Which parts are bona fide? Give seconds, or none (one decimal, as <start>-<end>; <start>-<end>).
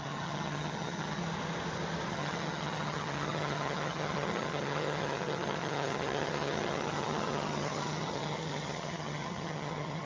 1.2-2.1